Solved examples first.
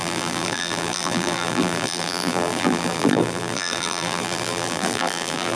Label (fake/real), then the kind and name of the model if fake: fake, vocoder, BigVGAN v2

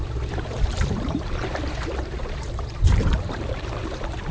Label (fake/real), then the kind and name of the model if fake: fake, vocoder, BigVGAN v2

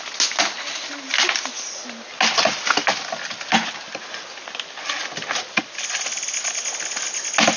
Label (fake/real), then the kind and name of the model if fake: real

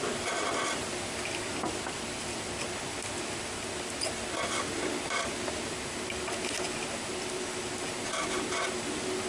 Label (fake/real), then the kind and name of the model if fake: real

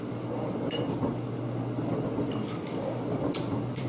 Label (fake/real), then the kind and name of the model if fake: real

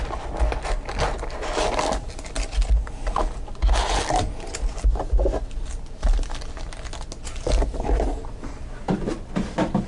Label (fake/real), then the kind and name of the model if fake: real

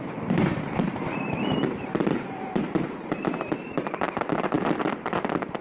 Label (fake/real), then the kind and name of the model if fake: fake, vocoder, BigVGAN v2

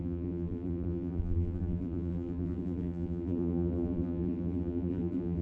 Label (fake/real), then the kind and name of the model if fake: fake, vocoder, BigVGAN v2